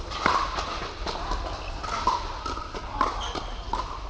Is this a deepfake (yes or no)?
no